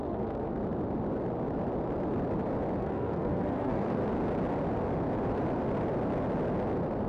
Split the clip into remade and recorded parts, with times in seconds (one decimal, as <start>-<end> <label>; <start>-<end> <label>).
0.0-0.6 remade; 0.6-2.8 recorded; 2.8-4.0 remade; 4.0-7.1 recorded